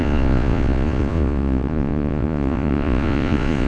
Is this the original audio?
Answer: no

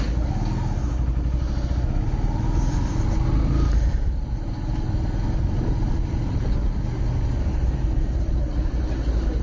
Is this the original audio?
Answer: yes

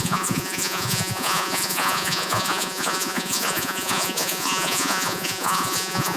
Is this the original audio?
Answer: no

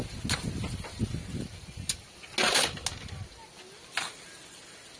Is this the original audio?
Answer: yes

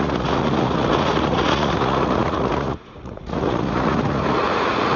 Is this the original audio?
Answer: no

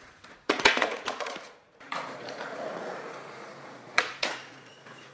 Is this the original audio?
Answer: no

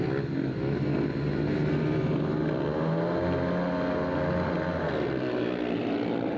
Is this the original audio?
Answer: yes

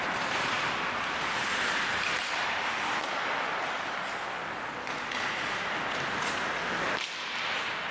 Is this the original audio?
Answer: yes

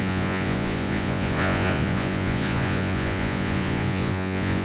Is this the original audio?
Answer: no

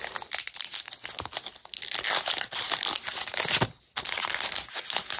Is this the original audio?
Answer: yes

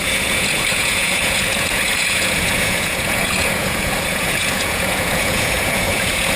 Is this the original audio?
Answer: no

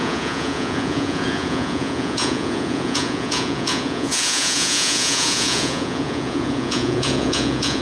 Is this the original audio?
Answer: no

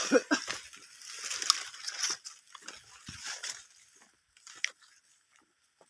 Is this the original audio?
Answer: yes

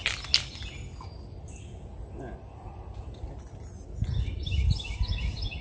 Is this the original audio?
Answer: yes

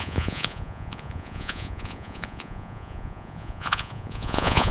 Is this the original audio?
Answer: no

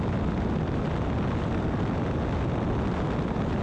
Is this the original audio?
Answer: yes